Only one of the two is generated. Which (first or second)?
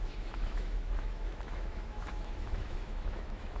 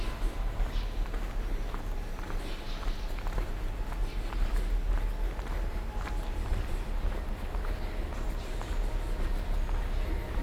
first